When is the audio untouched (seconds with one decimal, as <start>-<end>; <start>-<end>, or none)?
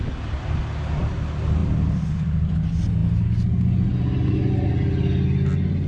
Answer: 0.0-5.9